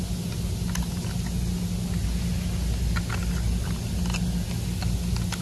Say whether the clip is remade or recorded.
recorded